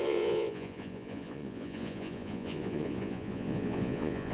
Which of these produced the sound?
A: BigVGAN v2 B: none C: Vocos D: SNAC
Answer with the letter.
C